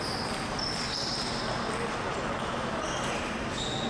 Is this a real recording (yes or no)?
yes